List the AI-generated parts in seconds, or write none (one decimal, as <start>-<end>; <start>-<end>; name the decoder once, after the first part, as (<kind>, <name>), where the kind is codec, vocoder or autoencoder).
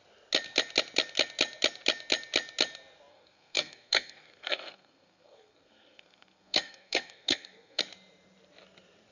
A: 3.1-7.8 (codec, SNAC)